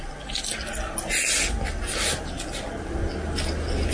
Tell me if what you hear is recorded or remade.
recorded